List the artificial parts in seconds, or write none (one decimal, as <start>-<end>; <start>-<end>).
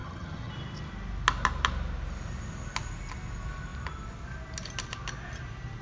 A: 0.0-0.5